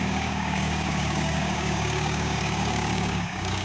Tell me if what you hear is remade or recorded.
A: remade